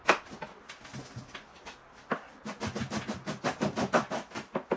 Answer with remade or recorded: recorded